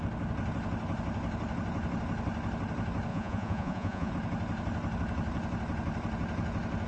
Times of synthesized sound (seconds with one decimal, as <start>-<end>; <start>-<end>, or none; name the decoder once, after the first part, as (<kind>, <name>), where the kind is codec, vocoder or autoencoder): 3.1-4.1 (vocoder, Vocos)